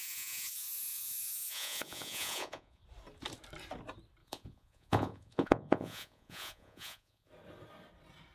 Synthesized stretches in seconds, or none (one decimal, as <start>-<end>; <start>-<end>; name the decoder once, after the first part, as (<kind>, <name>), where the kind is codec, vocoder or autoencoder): 0.0-2.8 (vocoder, Vocos); 4.2-7.3